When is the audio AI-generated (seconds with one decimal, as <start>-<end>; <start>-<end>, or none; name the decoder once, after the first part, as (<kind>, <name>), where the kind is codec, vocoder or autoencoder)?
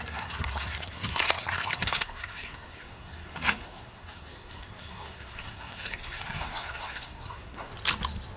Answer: 0.0-7.7 (codec, SNAC)